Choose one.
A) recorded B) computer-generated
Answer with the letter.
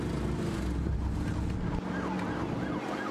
A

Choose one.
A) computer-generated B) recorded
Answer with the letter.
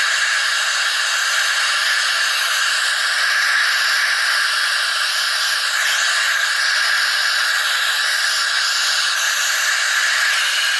B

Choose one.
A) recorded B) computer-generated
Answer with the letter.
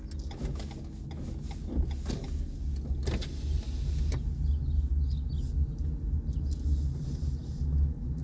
A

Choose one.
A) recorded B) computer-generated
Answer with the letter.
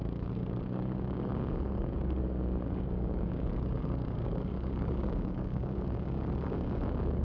B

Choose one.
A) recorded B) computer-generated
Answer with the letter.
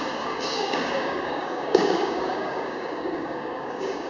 B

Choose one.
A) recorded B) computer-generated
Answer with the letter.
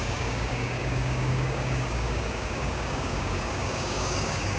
B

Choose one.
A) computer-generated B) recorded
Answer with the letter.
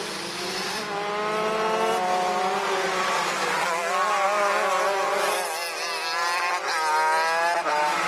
B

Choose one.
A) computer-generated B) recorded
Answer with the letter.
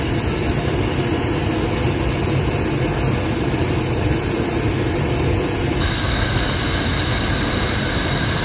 B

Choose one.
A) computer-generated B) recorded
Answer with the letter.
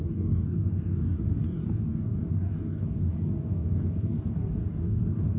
A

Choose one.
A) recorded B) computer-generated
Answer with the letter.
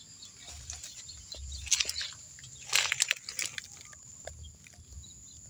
A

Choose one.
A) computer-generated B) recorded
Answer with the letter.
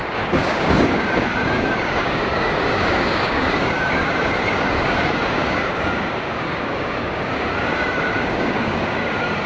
A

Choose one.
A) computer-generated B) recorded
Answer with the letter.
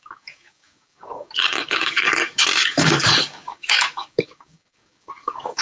A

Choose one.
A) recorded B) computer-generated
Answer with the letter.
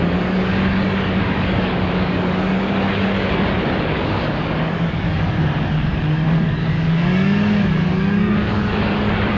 B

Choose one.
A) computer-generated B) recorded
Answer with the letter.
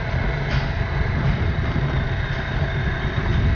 B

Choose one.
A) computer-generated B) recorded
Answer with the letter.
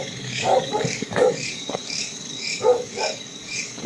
A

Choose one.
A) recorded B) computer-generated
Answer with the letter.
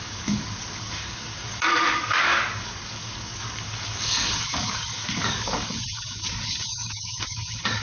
B